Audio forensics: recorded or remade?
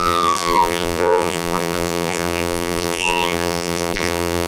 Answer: remade